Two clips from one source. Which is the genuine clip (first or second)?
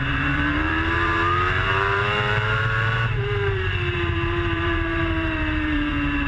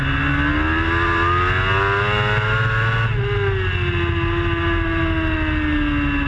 second